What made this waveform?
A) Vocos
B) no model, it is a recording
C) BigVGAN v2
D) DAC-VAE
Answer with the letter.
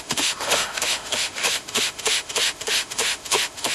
D